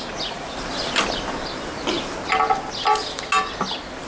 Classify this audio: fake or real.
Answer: real